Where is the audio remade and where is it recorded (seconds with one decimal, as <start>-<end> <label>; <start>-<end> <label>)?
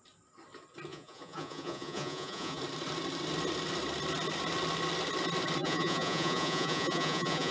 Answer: 0.0-0.9 recorded; 0.9-2.6 remade; 2.6-5.6 recorded; 5.6-7.5 remade